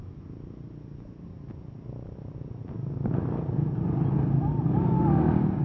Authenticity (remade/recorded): recorded